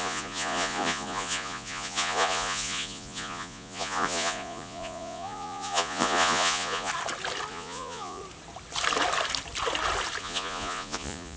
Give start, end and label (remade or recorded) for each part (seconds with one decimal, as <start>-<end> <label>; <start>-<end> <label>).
0.0-6.9 remade; 6.9-7.5 recorded; 7.5-8.2 remade; 8.2-10.2 recorded; 10.2-11.4 remade